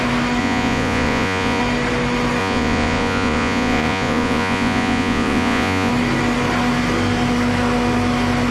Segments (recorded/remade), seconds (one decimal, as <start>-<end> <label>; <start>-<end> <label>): 0.0-0.4 recorded; 0.4-1.6 remade; 1.6-2.4 recorded; 2.4-5.9 remade; 5.9-8.5 recorded